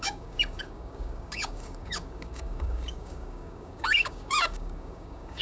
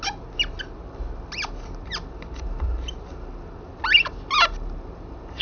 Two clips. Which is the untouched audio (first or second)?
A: second